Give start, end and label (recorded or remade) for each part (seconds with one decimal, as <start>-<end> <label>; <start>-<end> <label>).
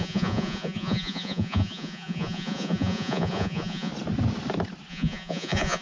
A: 0.0-3.9 remade; 3.9-4.9 recorded; 4.9-5.8 remade